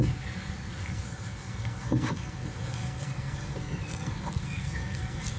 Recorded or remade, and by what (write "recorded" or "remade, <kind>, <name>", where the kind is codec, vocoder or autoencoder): remade, codec, SNAC